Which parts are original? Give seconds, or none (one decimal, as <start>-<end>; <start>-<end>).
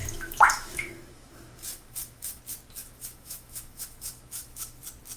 2.4-2.8; 4.8-5.2